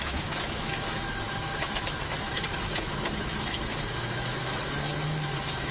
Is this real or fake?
fake